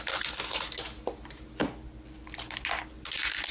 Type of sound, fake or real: real